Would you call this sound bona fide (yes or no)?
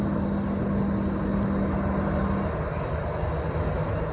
yes